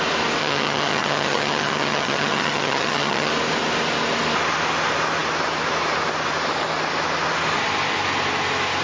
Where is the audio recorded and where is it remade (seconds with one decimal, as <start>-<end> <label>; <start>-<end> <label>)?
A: 0.0-0.4 recorded; 0.4-3.3 remade; 3.3-8.8 recorded